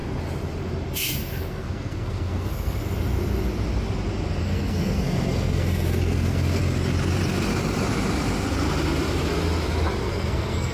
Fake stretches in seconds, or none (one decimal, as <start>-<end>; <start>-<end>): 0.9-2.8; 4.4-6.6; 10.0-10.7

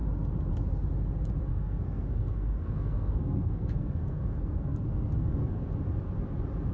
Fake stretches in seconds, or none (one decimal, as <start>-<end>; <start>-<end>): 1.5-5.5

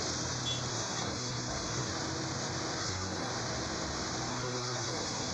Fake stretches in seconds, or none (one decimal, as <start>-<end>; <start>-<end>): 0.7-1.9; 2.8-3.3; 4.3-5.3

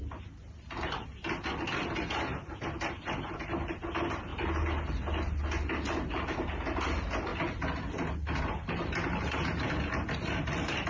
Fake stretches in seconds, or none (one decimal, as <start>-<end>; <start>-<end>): none

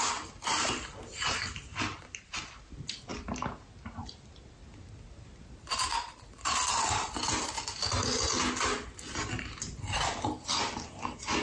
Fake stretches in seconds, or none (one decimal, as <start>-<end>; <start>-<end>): none